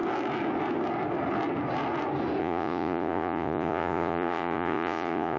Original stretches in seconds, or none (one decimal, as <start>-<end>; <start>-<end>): 0.0-2.4